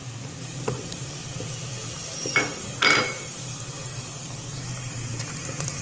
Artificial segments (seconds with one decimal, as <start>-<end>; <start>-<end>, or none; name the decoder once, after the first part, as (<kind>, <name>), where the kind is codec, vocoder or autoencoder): 0.0-3.5 (vocoder, BigVGAN v2)